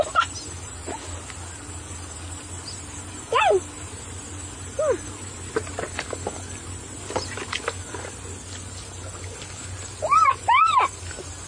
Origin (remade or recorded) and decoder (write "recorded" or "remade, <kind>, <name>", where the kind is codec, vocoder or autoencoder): recorded